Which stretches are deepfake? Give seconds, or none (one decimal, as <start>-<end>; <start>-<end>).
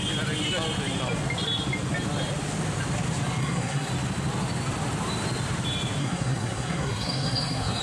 3.4-3.9; 6.0-7.8